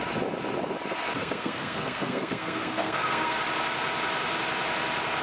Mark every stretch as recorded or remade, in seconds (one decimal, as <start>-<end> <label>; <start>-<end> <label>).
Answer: 0.0-1.2 recorded; 1.2-3.4 remade; 3.4-5.2 recorded